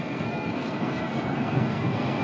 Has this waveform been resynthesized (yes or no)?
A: yes